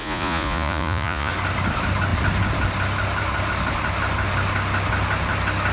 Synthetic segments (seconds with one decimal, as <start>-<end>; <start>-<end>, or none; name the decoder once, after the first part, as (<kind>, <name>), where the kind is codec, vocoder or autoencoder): 0.0-1.3 (vocoder, Vocos)